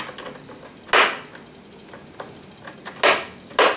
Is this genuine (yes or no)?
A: yes